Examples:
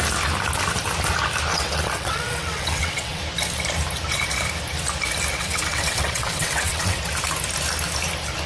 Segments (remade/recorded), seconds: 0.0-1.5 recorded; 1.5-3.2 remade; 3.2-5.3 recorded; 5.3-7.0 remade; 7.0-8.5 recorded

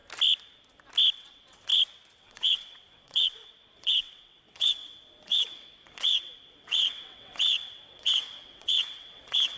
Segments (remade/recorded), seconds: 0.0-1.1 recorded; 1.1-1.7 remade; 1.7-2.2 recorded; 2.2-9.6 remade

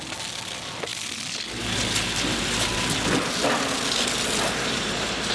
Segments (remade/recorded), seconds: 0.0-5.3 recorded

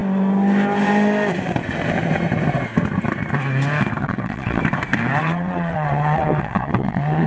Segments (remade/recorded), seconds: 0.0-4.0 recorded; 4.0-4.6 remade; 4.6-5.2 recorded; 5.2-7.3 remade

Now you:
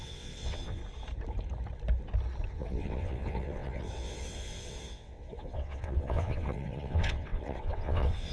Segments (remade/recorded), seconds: 0.0-0.8 remade; 0.8-2.5 recorded; 2.5-8.3 remade

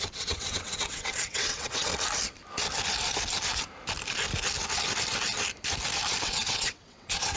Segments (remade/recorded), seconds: 0.0-1.9 remade; 1.9-6.2 recorded; 6.2-7.4 remade